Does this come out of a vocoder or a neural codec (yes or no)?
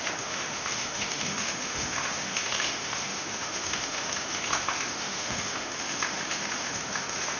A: yes